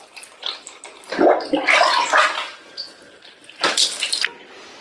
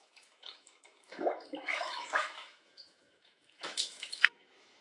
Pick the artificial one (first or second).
second